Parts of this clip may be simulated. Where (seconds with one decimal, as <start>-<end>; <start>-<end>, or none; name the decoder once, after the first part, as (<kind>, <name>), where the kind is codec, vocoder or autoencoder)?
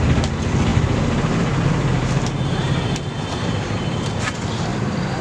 2.6-4.3 (vocoder, BigVGAN v2); 4.7-5.2